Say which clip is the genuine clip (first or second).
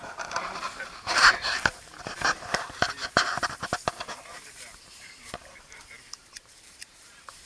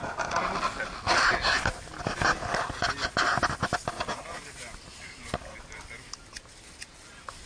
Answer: second